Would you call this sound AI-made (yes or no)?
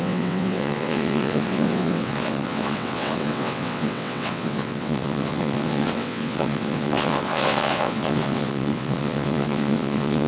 yes